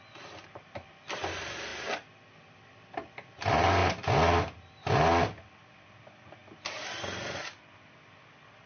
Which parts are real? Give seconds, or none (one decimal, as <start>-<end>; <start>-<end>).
0.0-8.7

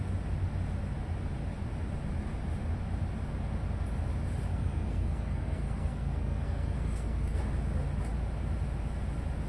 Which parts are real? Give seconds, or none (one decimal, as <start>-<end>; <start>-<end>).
0.0-4.5; 7.4-9.5

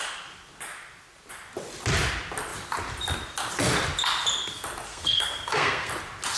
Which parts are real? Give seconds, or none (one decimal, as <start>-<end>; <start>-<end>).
0.0-4.9; 5.9-6.4

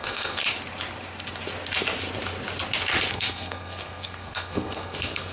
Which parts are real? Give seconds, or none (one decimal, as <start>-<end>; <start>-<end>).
0.4-3.1

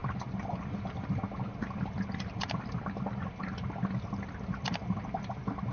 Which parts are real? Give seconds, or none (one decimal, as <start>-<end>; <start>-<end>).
0.0-5.7

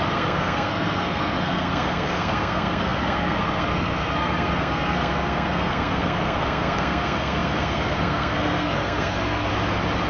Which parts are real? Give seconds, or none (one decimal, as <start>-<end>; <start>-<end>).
9.5-10.1

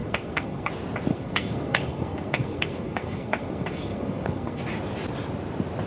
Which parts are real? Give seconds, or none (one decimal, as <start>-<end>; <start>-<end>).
0.7-1.1; 4.6-5.9